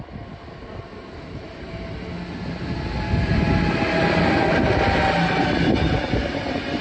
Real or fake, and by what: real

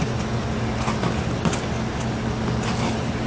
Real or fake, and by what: real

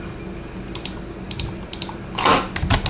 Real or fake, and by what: real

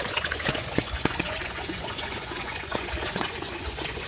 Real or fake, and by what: fake, vocoder, Vocos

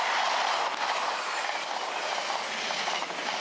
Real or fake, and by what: real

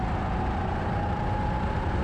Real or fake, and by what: real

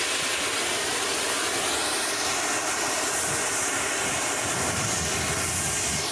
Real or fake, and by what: real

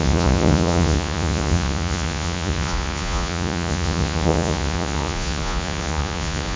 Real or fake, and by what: fake, vocoder, Vocos